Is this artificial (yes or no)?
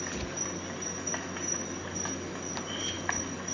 no